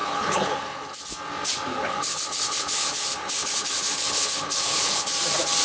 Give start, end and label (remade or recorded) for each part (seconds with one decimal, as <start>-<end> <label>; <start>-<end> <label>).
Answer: 0.0-1.0 remade; 1.0-1.7 recorded; 1.7-5.1 remade; 5.1-5.6 recorded